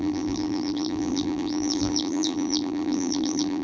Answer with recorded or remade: remade